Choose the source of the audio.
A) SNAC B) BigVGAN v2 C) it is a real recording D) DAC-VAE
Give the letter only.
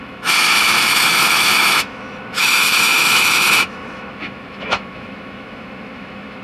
D